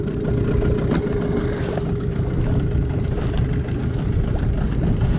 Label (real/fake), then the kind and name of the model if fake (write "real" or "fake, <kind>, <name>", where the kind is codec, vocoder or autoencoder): real